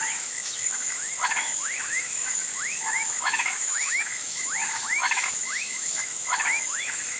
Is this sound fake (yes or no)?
yes